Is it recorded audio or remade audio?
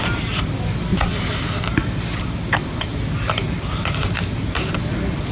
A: recorded